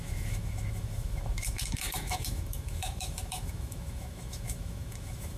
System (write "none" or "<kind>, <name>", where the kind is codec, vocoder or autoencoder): autoencoder, DAC-VAE